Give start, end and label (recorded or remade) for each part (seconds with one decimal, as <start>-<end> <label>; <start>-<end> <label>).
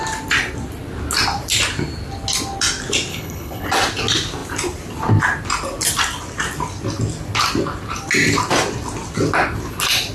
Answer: 0.0-3.1 recorded; 3.1-3.7 remade; 3.7-10.1 recorded